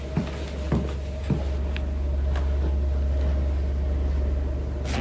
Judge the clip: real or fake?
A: real